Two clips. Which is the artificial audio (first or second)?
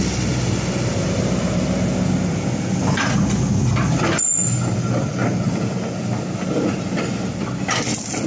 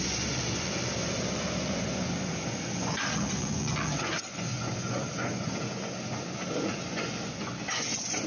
second